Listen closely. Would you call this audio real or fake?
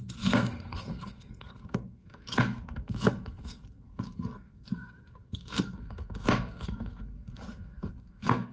fake